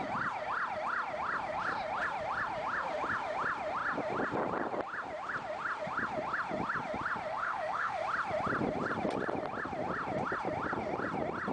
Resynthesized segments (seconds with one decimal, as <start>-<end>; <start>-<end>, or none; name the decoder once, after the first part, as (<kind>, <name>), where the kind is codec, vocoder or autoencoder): 7.3-8.0 (autoencoder, DAC-VAE)